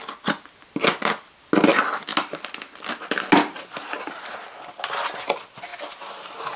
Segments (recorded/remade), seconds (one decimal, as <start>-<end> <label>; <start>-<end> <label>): 0.0-6.6 recorded